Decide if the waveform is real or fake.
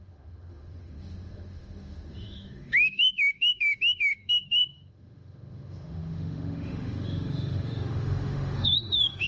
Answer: fake